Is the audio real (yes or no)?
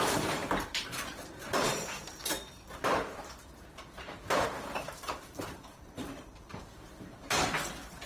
no